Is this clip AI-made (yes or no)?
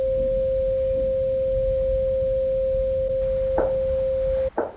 no